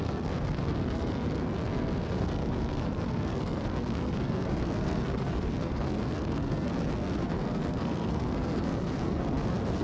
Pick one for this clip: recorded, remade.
remade